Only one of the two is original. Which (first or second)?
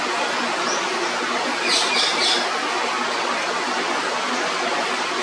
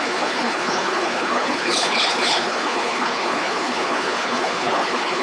first